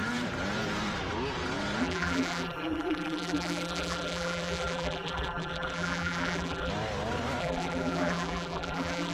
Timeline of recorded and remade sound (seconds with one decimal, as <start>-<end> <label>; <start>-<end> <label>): 0.0-1.8 recorded; 1.8-6.7 remade; 6.7-7.4 recorded; 7.4-9.1 remade